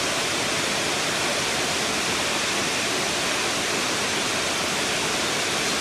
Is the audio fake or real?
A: fake